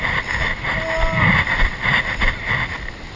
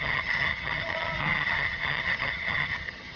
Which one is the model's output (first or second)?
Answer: second